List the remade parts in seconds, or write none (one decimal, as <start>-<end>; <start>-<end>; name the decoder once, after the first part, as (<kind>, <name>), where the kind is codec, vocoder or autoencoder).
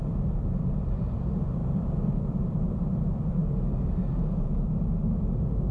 0.0-3.4 (vocoder, BigVGAN v2)